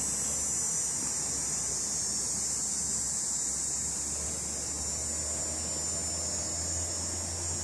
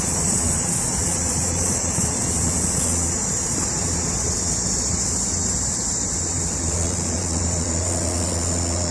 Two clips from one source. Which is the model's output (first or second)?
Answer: second